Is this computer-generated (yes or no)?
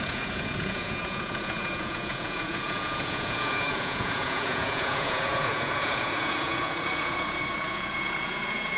yes